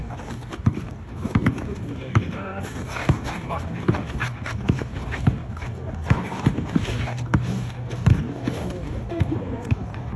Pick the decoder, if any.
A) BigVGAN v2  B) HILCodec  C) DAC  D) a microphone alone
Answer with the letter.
C